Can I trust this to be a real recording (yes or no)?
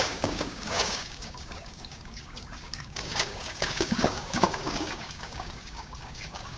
no